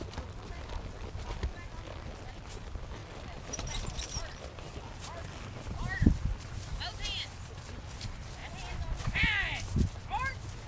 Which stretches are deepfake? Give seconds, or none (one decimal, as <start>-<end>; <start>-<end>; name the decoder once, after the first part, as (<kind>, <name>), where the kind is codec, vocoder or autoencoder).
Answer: 3.0-4.8 (vocoder, BigVGAN v2); 8.4-9.2